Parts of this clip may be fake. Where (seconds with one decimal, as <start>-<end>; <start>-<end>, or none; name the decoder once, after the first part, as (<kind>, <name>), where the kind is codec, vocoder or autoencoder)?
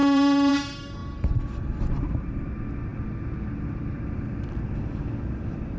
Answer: 0.0-0.5 (vocoder, BigVGAN v2); 1.0-2.5